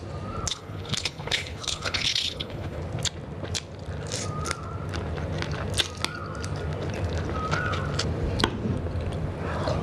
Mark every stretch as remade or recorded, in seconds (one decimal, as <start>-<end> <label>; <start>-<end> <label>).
0.0-0.5 recorded; 0.5-2.8 remade; 2.8-9.8 recorded